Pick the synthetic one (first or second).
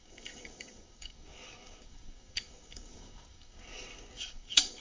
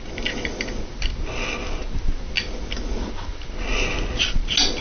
first